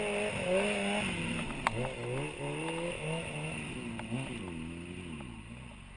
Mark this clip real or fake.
real